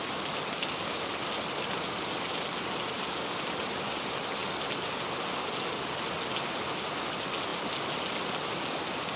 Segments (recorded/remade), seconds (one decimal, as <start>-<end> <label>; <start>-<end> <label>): 0.0-9.2 recorded